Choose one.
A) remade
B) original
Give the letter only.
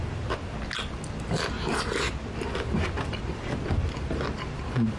B